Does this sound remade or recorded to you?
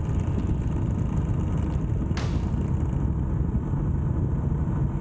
recorded